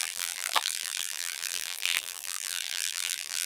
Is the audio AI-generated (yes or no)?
yes